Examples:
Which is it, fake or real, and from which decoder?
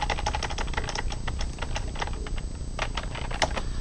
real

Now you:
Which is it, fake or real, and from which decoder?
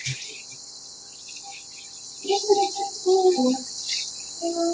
real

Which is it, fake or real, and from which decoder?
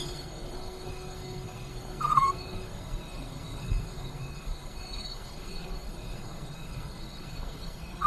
fake, codec, SNAC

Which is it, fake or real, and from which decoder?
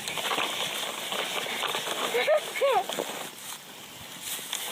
real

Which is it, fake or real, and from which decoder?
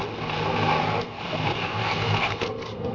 fake, codec, SNAC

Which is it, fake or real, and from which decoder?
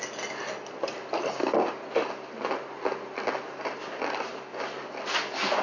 real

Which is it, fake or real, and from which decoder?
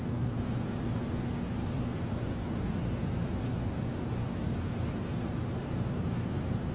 real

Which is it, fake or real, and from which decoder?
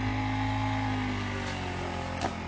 real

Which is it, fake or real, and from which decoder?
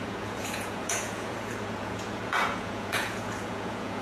fake, vocoder, Vocos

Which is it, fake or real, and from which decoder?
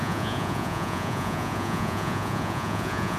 fake, vocoder, Vocos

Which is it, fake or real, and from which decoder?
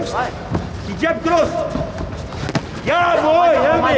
real